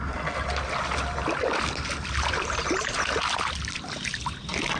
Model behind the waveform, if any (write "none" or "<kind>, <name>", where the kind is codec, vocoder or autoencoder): none